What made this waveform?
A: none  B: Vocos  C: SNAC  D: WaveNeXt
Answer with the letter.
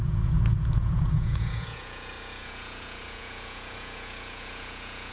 B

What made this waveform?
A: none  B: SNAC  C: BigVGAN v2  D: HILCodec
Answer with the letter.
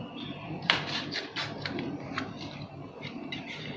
C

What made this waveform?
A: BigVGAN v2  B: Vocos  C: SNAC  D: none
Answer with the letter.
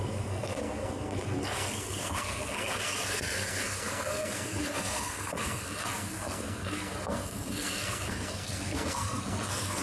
C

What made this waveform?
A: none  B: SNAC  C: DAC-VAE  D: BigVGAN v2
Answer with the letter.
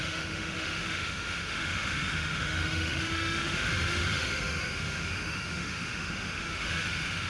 C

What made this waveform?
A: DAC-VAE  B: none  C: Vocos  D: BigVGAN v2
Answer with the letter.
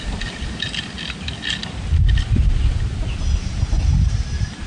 B